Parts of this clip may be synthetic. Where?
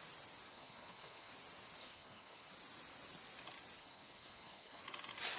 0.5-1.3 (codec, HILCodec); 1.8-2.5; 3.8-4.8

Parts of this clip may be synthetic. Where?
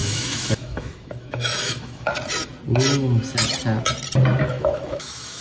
0.0-2.1 (autoencoder, DAC-VAE); 4.5-5.4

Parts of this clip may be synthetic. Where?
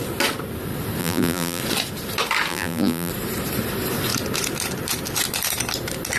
1.0-1.6 (vocoder, BigVGAN v2); 2.5-3.1